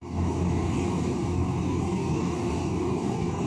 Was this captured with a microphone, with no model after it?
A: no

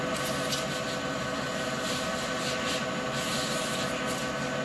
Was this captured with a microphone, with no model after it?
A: yes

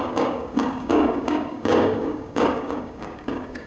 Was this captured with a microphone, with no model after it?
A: no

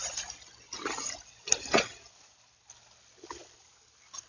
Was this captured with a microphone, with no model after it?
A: yes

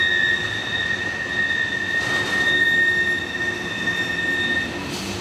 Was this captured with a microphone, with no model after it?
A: yes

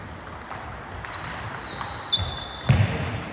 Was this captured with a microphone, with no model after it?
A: yes